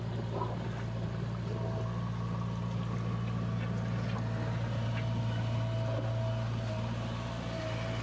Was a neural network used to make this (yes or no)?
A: no